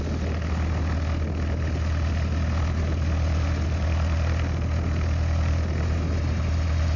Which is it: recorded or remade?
recorded